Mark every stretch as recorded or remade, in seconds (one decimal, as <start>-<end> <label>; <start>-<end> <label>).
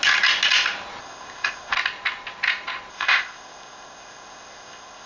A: 0.0-1.0 recorded; 1.0-1.7 remade; 1.7-2.9 recorded; 2.9-5.1 remade